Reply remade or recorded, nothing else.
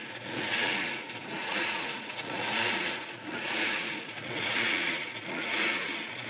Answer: remade